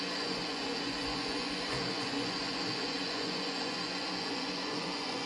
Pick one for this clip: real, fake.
fake